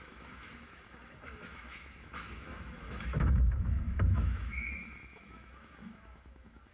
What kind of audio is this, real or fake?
fake